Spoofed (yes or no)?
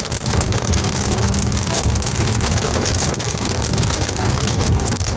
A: yes